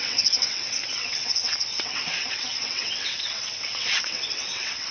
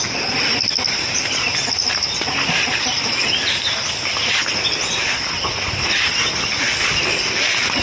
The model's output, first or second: first